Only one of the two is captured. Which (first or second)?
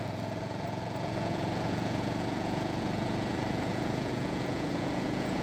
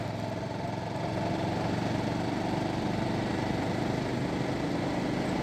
second